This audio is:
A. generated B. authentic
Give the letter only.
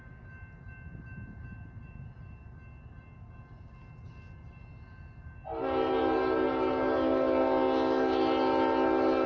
B